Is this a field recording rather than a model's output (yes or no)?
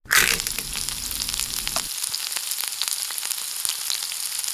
yes